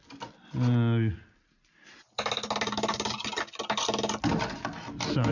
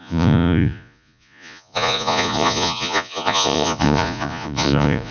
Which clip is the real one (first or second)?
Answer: first